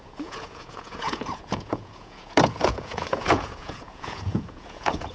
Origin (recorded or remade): remade